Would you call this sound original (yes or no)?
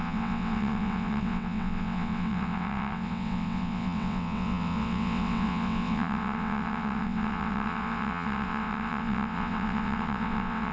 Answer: no